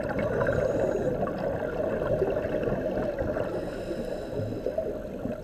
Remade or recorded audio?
recorded